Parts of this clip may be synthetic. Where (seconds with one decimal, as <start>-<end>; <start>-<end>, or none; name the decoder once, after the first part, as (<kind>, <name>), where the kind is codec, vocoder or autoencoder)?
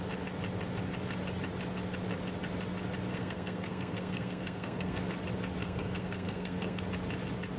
3.1-5.0 (codec, SNAC); 5.6-6.8